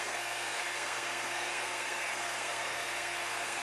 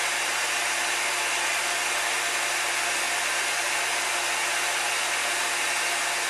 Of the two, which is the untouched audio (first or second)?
second